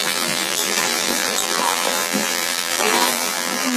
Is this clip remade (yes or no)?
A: yes